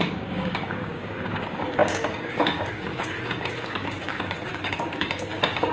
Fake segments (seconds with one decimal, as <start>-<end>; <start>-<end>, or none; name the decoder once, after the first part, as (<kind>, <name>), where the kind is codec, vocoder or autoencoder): 0.0-5.7 (codec, DAC)